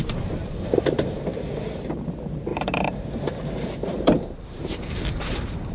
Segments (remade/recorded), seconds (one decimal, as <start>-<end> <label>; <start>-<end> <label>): 0.0-5.7 remade